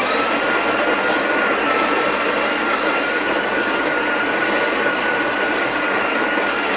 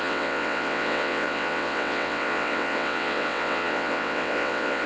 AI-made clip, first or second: second